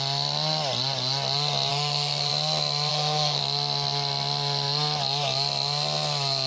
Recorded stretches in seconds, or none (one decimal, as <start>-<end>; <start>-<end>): 0.0-1.7; 2.3-2.9; 3.4-6.5